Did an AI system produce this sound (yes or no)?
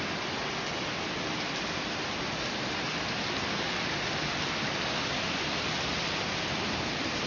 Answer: no